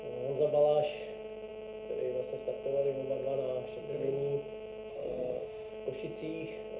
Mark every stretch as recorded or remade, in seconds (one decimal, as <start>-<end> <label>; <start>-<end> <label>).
0.0-4.9 recorded; 4.9-5.7 remade; 5.7-6.8 recorded